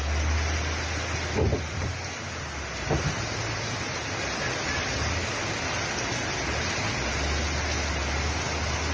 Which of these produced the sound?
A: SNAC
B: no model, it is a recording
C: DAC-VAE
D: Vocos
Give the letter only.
B